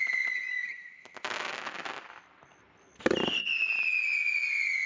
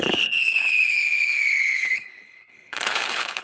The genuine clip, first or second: first